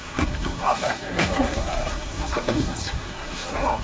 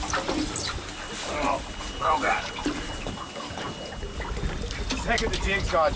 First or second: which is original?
second